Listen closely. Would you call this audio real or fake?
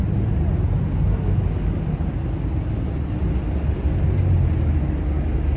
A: real